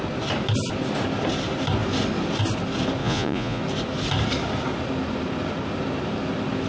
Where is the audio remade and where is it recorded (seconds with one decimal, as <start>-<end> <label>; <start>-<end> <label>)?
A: 0.0-3.0 recorded; 3.0-3.6 remade; 3.6-6.7 recorded